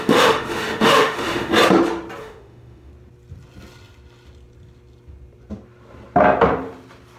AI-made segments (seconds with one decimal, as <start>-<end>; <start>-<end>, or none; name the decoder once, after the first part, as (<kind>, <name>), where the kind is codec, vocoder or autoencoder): 0.0-1.5 (autoencoder, DAC-VAE); 2.2-2.9